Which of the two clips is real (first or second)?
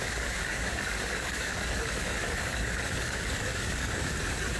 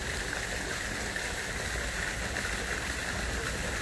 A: second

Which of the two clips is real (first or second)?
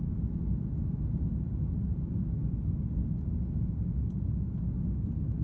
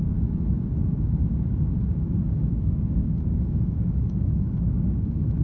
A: first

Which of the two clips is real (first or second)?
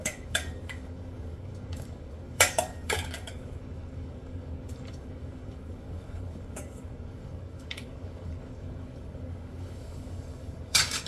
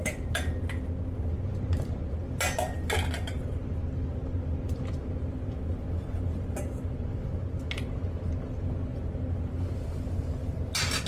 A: second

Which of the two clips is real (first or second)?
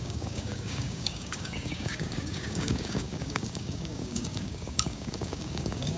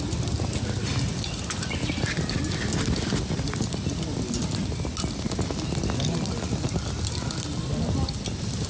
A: second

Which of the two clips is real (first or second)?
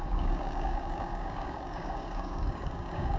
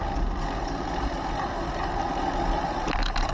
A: second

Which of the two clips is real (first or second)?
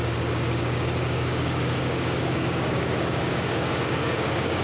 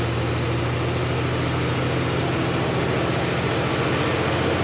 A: second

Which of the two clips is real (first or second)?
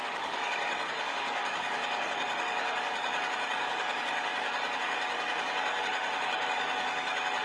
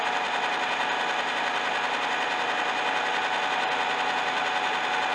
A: second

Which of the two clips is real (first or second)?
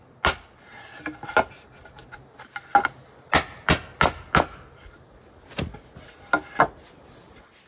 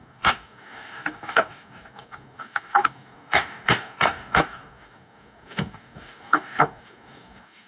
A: first